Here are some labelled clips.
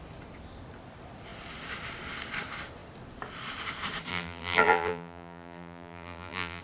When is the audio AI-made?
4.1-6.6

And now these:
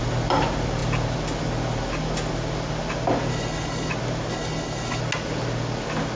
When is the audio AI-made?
3.3-3.9; 4.3-5.0